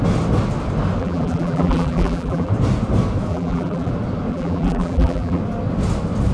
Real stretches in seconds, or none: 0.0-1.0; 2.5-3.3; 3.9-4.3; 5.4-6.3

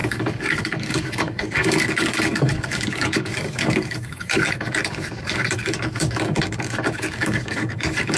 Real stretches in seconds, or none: none

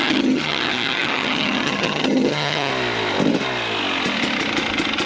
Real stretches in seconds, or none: 2.7-5.1